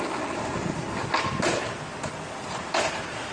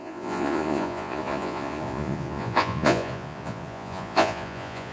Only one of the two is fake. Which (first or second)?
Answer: second